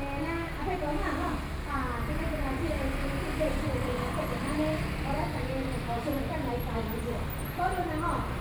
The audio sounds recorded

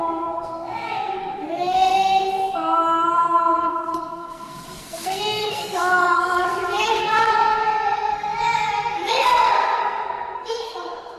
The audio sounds remade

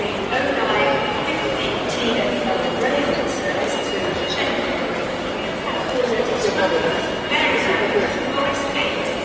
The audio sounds recorded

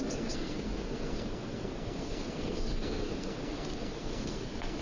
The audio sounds remade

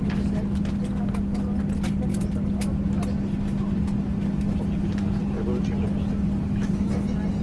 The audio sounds recorded